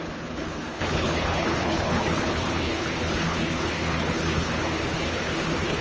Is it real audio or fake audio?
fake